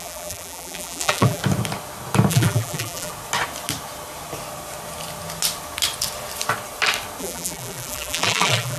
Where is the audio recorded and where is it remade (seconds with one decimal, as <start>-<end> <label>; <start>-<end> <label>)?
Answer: 0.0-1.4 remade; 1.4-2.3 recorded; 2.3-3.1 remade; 3.1-7.2 recorded; 7.2-8.8 remade